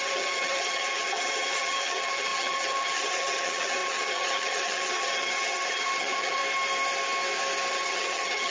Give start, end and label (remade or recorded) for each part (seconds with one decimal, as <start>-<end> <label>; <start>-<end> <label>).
0.0-6.4 remade; 6.4-7.7 recorded; 7.7-8.5 remade

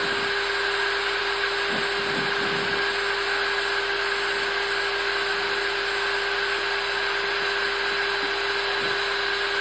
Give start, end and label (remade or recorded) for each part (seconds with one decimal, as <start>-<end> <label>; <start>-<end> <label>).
0.0-9.6 recorded

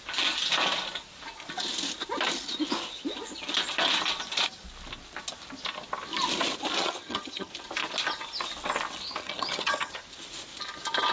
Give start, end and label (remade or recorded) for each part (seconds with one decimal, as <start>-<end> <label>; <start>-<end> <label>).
0.0-6.8 recorded; 6.8-7.5 remade; 7.5-9.2 recorded; 9.2-9.9 remade; 9.9-11.1 recorded

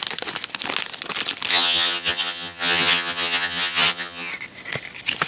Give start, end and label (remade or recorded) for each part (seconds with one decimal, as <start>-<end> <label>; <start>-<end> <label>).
0.0-1.5 recorded; 1.5-4.3 remade; 4.3-5.3 recorded

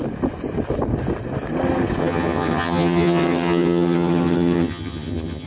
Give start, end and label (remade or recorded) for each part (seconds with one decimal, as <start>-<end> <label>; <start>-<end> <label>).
0.0-2.0 recorded; 2.0-5.5 remade

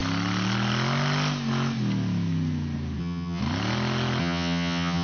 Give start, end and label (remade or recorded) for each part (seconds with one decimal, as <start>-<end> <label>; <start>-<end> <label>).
0.0-3.0 recorded; 3.0-3.4 remade; 3.4-4.2 recorded; 4.2-5.0 remade

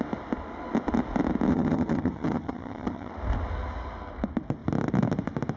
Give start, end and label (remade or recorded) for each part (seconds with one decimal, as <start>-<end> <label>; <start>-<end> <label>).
0.0-1.5 recorded; 1.5-3.1 remade; 3.1-5.6 recorded